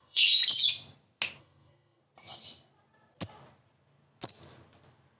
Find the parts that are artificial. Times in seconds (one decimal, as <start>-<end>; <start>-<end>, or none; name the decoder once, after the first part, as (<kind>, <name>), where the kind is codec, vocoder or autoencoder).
0.0-0.4 (codec, SNAC); 1.4-2.0